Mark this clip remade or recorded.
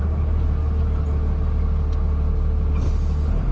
recorded